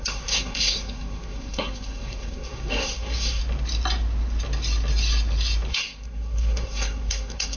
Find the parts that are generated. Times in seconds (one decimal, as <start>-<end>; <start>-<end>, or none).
0.0-3.4; 5.7-7.6